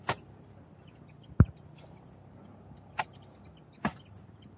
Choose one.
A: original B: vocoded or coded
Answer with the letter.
A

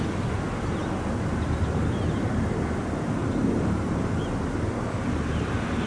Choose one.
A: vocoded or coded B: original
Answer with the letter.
B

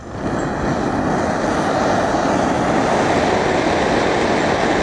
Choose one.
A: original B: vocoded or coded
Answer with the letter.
A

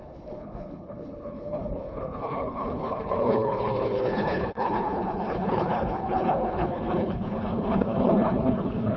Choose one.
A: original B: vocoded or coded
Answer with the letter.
B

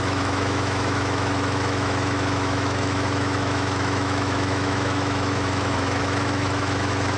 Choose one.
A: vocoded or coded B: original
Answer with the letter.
A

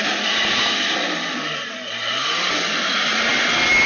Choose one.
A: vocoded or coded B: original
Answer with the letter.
B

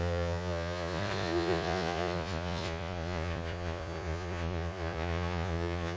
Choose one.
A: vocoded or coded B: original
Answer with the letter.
A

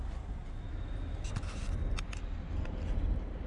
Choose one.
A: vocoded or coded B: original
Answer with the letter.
B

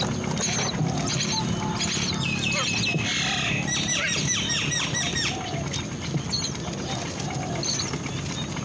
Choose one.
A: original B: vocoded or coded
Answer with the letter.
A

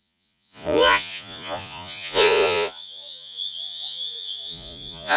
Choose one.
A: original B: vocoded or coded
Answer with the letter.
B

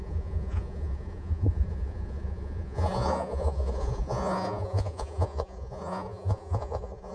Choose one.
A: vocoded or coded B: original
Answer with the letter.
A